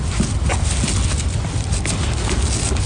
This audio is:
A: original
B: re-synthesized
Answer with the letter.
A